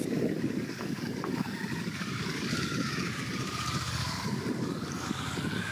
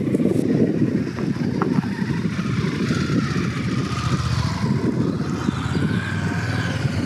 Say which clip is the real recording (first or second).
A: second